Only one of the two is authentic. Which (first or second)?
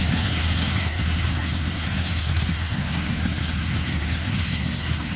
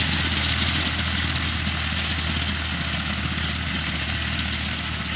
second